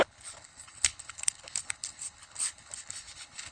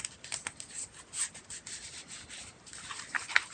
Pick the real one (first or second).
second